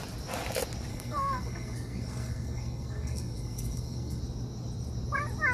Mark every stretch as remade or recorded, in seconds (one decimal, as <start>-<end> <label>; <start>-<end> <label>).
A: 0.0-0.9 recorded; 0.9-4.2 remade; 4.2-5.5 recorded